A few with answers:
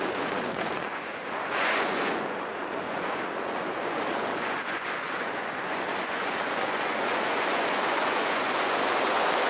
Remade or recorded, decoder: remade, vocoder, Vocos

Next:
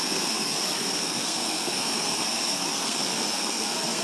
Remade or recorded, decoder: remade, codec, SNAC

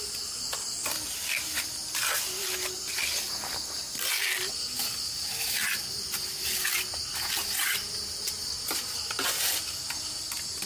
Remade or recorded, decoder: recorded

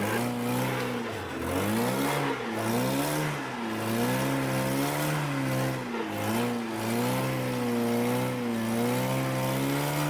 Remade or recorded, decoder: recorded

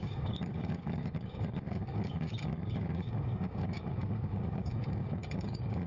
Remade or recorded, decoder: remade, codec, DAC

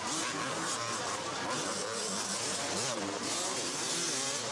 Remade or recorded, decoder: recorded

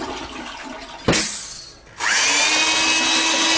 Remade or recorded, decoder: recorded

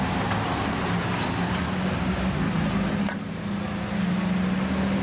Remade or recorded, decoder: recorded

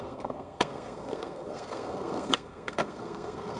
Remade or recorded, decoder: remade, codec, SNAC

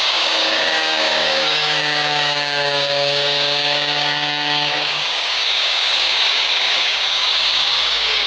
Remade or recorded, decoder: remade, codec, DAC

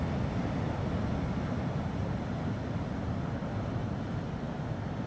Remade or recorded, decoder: recorded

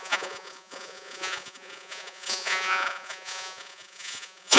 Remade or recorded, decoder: remade, vocoder, Vocos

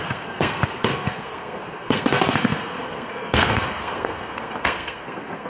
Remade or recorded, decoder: remade, codec, SNAC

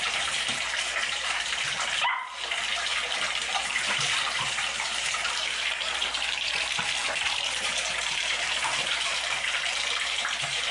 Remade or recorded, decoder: remade, vocoder, BigVGAN v2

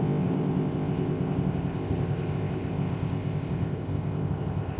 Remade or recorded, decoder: remade, codec, ZipCodec